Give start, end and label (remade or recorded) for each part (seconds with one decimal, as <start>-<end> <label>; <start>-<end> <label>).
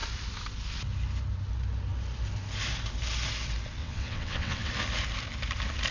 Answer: 0.0-3.8 recorded; 3.8-4.7 remade; 4.7-5.9 recorded